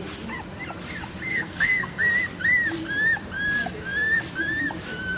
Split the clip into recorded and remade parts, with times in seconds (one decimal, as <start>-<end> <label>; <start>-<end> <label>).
0.0-1.3 recorded; 1.3-2.0 remade; 2.0-5.2 recorded